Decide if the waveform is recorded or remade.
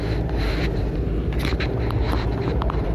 remade